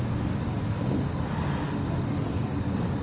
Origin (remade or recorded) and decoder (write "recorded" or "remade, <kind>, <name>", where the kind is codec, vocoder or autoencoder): recorded